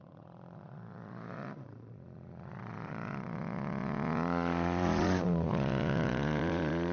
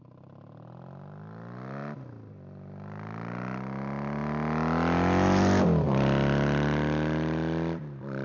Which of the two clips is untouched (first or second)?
second